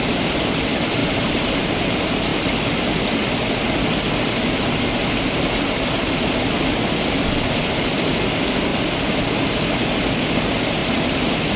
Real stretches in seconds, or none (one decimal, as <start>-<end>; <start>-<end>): 0.0-1.0; 1.7-8.7; 9.2-10.8